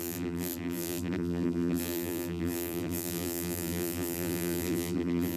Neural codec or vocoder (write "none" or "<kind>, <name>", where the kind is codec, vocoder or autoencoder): vocoder, BigVGAN v2